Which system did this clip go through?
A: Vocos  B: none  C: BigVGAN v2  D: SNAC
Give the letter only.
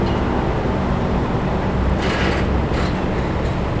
B